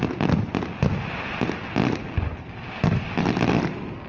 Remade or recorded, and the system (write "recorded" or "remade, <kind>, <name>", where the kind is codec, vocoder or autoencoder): recorded